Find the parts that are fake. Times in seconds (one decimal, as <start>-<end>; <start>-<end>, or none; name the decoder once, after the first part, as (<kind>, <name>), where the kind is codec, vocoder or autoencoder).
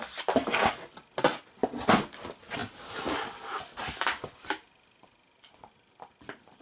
none